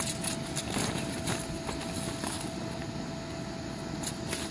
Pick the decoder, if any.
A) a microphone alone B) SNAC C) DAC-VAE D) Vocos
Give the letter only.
A